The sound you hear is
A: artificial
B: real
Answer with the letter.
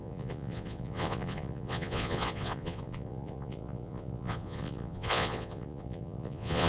A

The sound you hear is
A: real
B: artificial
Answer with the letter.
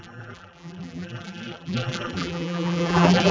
B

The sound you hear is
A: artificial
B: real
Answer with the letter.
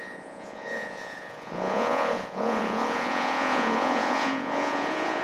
A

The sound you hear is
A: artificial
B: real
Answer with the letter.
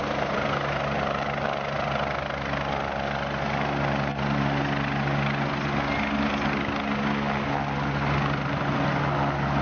B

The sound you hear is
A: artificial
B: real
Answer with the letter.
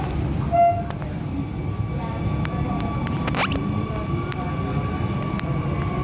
B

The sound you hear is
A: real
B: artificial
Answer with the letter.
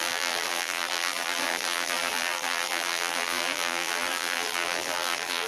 B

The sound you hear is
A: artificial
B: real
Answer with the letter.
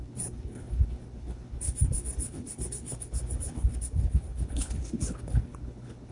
A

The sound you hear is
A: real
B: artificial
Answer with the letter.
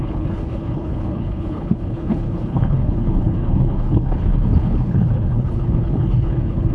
B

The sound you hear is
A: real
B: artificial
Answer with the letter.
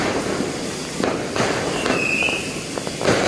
A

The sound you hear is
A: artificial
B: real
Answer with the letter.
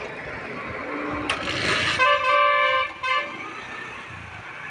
B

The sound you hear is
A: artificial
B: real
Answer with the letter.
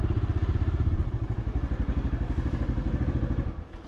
B